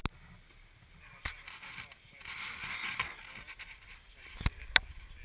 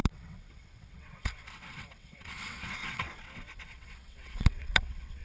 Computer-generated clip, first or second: second